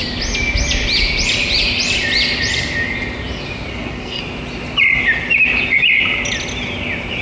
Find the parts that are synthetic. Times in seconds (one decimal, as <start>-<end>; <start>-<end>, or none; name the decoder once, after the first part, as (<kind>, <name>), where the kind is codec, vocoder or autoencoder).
3.7-4.2 (codec, SNAC)